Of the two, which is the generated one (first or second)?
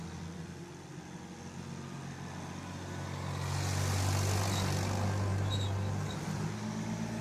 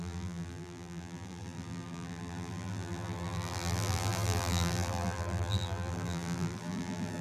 second